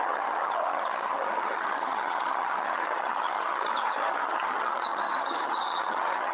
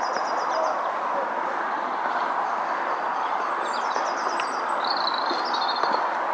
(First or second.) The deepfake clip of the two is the first